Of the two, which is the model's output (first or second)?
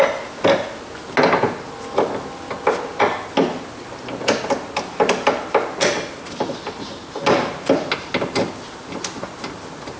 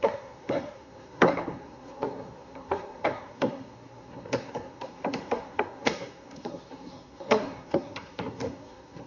second